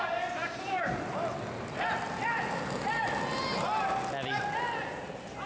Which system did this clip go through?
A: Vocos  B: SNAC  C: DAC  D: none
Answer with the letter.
D